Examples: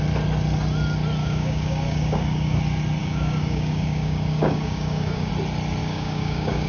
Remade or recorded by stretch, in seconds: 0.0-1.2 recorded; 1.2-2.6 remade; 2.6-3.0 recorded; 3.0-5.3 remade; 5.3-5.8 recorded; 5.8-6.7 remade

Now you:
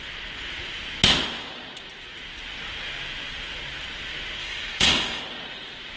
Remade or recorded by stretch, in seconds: 0.0-4.4 recorded; 4.4-5.2 remade; 5.2-6.0 recorded

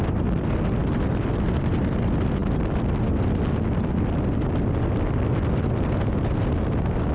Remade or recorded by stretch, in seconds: 0.0-7.1 recorded

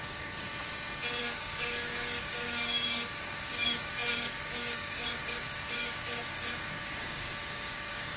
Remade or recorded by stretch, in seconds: 0.0-0.5 remade; 0.5-1.2 recorded; 1.2-8.2 remade

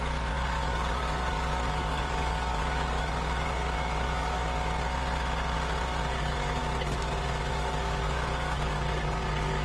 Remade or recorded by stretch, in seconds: 0.0-4.4 remade; 4.4-6.1 recorded; 6.1-6.6 remade; 6.6-7.5 recorded; 7.5-9.6 remade

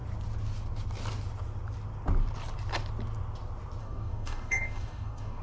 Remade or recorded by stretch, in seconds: 0.0-3.8 recorded; 3.8-5.4 remade

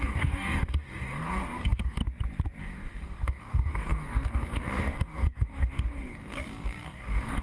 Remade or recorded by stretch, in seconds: 0.0-2.0 remade; 2.0-2.6 recorded; 2.6-7.4 remade

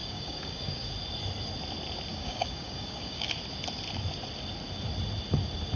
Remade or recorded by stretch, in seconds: 0.0-0.9 remade; 0.9-2.1 recorded; 2.1-3.3 remade; 3.3-5.8 recorded